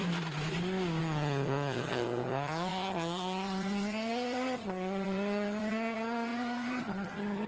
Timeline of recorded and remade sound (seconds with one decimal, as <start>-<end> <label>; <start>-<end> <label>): 0.0-1.0 recorded; 1.0-7.5 remade

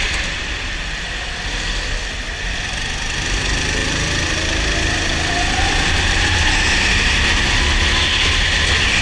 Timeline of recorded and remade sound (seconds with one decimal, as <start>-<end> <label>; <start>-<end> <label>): 0.0-9.0 recorded

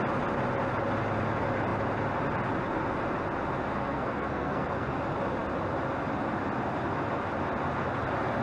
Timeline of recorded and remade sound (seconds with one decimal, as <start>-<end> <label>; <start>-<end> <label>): 0.0-3.7 recorded; 3.7-4.9 remade; 4.9-8.4 recorded

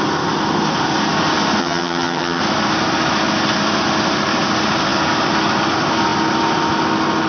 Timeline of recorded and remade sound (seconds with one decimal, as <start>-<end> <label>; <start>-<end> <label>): 0.0-1.6 recorded; 1.6-2.4 remade; 2.4-7.3 recorded

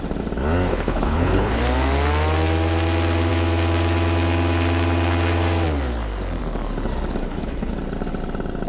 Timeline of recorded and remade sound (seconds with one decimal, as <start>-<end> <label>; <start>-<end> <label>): 0.0-0.7 recorded; 0.7-1.6 remade; 1.6-7.2 recorded; 7.2-7.7 remade; 7.7-8.7 recorded

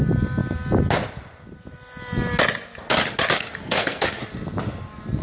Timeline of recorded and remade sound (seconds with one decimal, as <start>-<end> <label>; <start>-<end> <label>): 0.0-3.6 recorded; 3.6-4.2 remade; 4.2-5.2 recorded